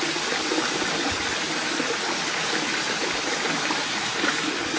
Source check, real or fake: real